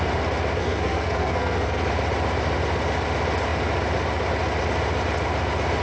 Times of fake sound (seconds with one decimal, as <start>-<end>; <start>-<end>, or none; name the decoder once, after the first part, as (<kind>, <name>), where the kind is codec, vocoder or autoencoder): 0.6-1.8 (codec, SNAC)